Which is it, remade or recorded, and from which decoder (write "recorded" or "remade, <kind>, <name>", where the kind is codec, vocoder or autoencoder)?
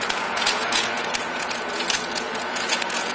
remade, vocoder, Vocos